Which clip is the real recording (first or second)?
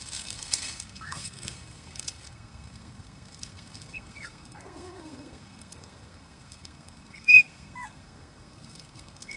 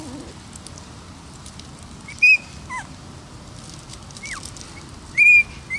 second